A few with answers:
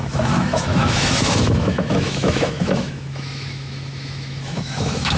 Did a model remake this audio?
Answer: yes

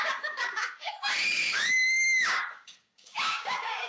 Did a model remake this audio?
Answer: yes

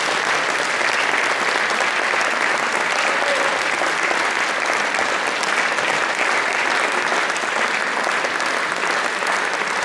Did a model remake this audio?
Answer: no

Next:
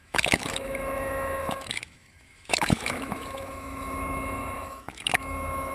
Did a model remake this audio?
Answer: yes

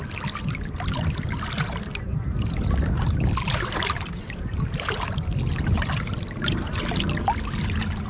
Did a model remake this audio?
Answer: no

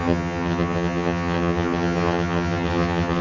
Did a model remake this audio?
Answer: yes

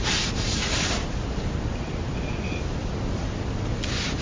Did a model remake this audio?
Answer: no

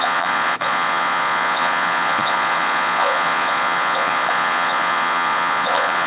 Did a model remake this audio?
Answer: yes